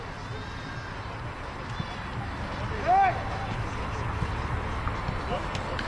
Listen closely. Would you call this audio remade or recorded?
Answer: recorded